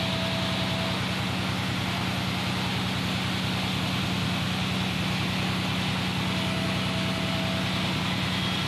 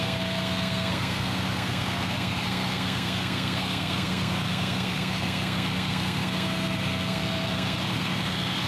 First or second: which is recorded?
first